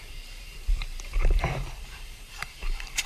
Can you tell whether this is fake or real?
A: fake